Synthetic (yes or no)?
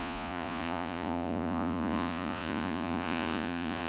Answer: yes